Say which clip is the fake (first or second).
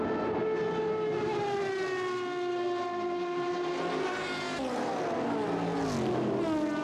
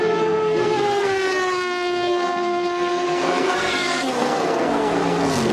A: second